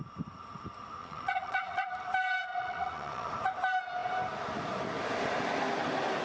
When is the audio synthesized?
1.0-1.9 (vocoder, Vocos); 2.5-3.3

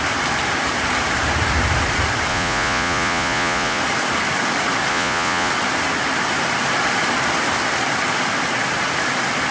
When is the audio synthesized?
2.3-3.8 (vocoder, Vocos); 4.9-5.5

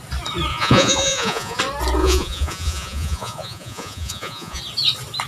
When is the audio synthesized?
0.5-1.6 (vocoder, Vocos); 2.0-4.6

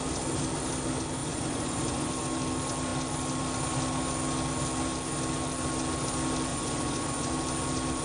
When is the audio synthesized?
1.2-2.1 (vocoder, Vocos); 6.5-7.3

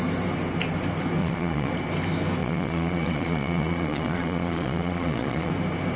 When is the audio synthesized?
1.2-1.7 (vocoder, Vocos); 2.4-5.5

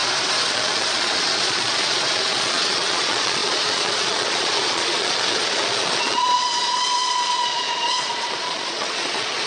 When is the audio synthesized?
0.5-9.5 (vocoder, Vocos)

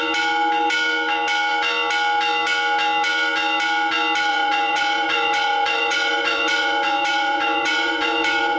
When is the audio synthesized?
4.3-8.6 (vocoder, Vocos)